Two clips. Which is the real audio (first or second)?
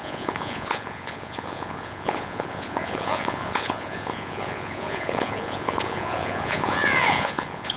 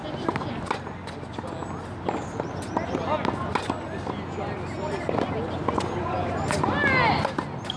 second